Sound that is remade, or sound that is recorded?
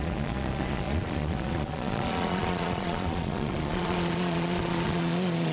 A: remade